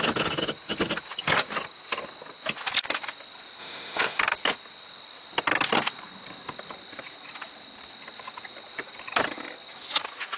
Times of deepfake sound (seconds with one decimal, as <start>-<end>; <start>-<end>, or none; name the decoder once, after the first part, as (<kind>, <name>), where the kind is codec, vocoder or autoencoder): 3.6-4.2 (autoencoder, DAC-VAE)